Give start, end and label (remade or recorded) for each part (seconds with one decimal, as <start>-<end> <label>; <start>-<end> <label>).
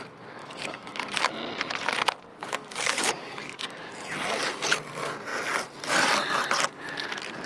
0.0-0.4 recorded; 0.4-1.3 remade; 1.3-2.3 recorded; 2.3-3.9 remade; 3.9-7.5 recorded